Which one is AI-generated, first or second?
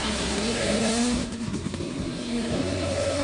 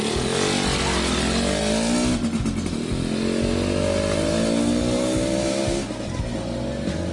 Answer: first